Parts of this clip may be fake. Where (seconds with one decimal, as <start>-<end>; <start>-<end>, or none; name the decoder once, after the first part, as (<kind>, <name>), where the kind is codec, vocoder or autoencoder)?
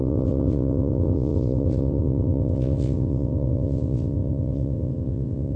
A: 0.0-5.6 (vocoder, WaveNeXt)